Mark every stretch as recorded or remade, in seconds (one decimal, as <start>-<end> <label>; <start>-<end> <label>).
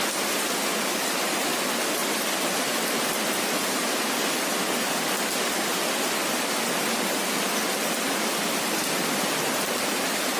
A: 0.0-2.0 recorded; 2.0-3.1 remade; 3.1-10.4 recorded